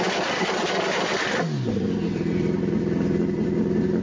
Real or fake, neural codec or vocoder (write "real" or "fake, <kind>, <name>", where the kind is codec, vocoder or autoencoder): real